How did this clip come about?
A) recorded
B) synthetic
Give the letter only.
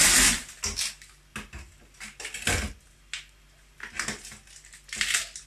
A